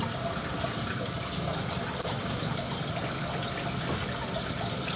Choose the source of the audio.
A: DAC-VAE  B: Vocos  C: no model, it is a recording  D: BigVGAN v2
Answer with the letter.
C